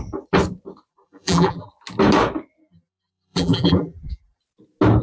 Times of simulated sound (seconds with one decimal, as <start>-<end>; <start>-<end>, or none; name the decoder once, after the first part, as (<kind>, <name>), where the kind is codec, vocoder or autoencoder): 0.9-1.7 (vocoder, BigVGAN v2); 2.6-4.4